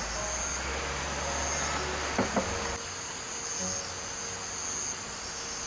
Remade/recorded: recorded